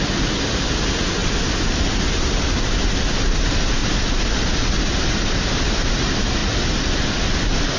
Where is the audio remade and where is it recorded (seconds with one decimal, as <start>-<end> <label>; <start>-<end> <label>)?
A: 0.0-1.2 recorded; 1.2-1.9 remade; 1.9-3.8 recorded; 3.8-5.3 remade; 5.3-6.4 recorded; 6.4-7.8 remade